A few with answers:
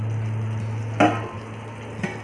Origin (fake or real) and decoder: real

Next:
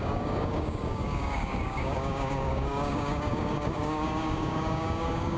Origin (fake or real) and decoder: fake, codec, DAC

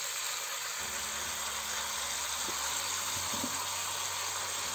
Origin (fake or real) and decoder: real